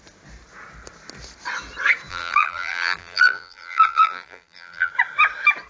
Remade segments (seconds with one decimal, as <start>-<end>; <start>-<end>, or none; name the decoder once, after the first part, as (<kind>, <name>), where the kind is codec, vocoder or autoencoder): 2.1-4.9 (vocoder, BigVGAN v2)